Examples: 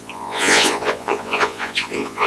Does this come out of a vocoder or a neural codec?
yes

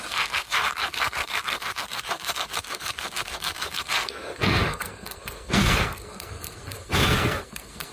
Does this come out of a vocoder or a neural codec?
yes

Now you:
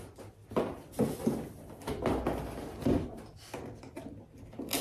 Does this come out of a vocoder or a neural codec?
no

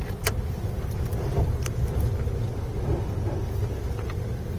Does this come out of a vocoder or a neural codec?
no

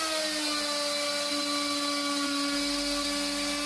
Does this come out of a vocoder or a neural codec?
no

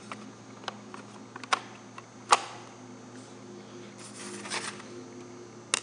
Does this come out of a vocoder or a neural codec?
no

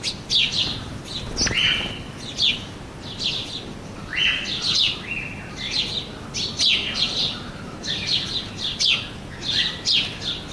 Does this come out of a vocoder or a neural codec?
no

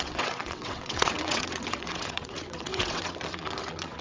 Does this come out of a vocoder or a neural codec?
yes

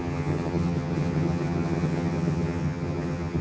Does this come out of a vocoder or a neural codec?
yes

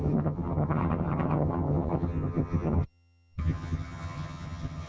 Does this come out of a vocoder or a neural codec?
yes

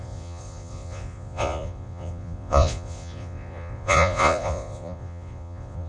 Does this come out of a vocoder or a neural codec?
yes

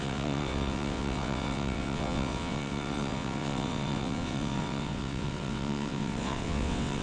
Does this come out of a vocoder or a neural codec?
yes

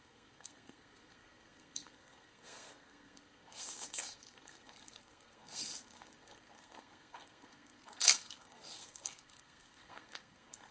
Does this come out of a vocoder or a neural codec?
yes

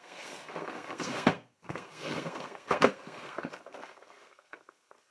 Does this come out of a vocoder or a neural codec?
yes